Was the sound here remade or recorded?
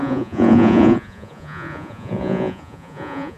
remade